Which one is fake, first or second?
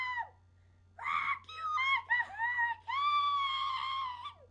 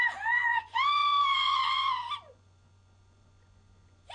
second